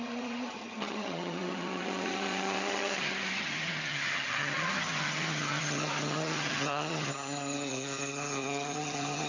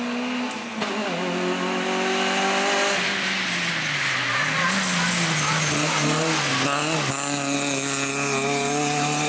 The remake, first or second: first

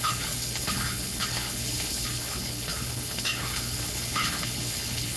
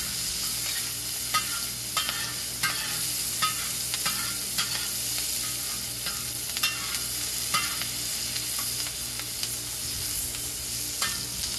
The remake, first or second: first